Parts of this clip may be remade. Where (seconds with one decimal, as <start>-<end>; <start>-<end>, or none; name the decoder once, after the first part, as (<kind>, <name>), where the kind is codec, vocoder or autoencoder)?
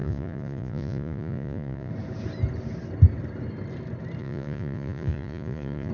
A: 0.0-1.9 (vocoder, Vocos); 4.2-5.9